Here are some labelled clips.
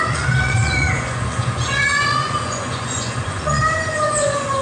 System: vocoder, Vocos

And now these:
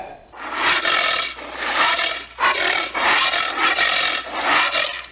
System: none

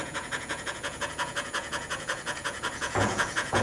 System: vocoder, Vocos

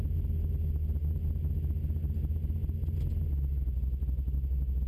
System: none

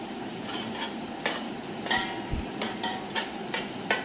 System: none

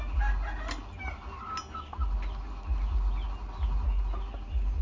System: none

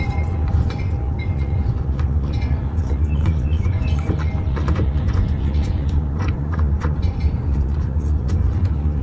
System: vocoder, Vocos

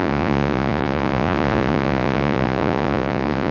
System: vocoder, Vocos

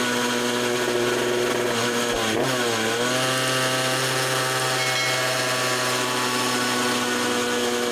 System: none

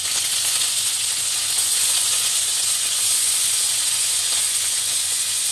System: vocoder, Vocos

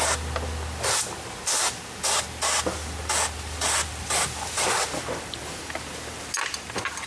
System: none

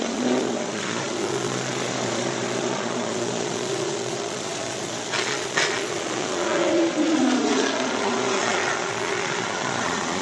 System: vocoder, Vocos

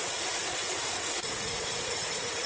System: vocoder, Vocos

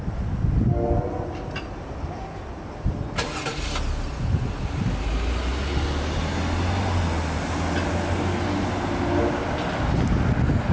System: none